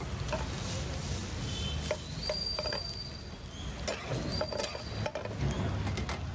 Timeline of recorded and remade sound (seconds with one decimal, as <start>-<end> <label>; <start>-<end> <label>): 0.0-6.3 recorded